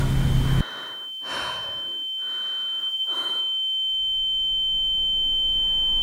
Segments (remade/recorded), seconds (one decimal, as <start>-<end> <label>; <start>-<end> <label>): 0.0-2.8 recorded; 2.8-3.4 remade; 3.4-6.0 recorded